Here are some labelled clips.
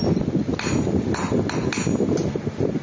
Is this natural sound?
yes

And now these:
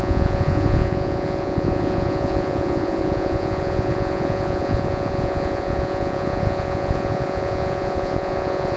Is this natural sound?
no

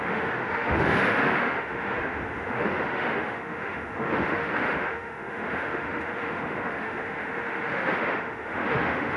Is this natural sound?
no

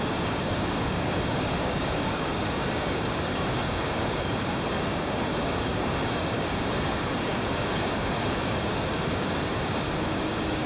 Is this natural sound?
no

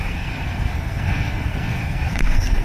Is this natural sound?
no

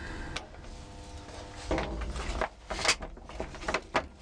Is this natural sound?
yes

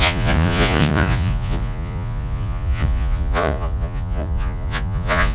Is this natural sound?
no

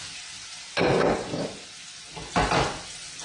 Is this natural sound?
yes